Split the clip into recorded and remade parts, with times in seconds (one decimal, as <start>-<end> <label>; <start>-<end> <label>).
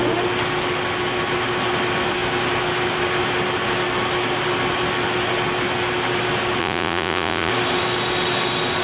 0.0-6.6 recorded; 6.6-7.5 remade; 7.5-8.8 recorded